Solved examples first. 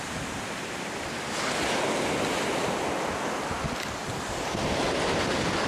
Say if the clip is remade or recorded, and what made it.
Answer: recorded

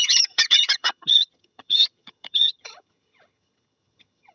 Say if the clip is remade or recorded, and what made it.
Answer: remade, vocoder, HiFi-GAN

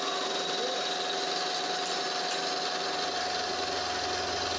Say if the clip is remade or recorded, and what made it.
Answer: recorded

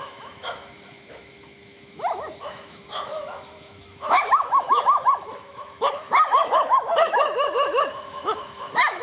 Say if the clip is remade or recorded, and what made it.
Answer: remade, autoencoder, DAC-VAE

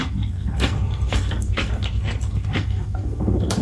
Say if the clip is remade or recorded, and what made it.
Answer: remade, codec, SNAC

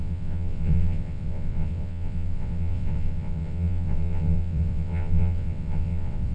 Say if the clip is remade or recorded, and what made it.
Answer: remade, vocoder, WaveNeXt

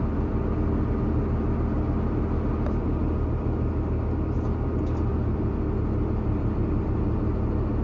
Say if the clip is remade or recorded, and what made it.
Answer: recorded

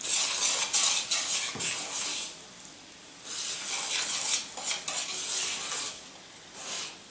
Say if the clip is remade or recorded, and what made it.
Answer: recorded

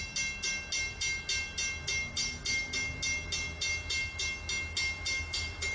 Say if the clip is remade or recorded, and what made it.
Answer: recorded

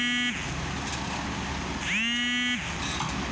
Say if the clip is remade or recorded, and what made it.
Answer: recorded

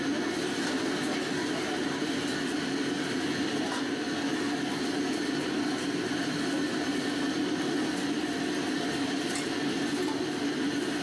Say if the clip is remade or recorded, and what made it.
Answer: recorded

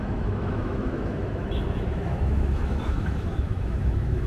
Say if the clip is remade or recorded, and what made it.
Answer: remade, autoencoder, DAC-VAE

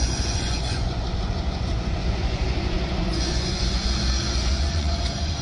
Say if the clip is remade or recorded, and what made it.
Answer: remade, vocoder, Vocos